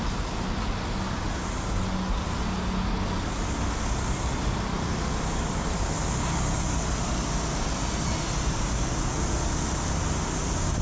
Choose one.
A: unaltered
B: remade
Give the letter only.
A